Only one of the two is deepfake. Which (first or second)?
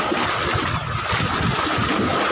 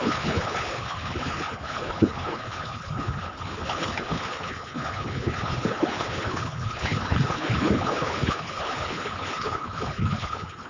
second